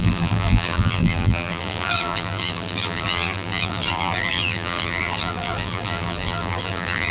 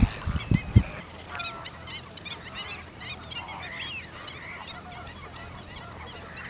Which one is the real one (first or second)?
second